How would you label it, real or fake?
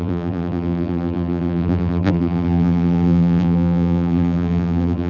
fake